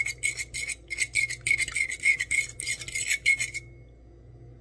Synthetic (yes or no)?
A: no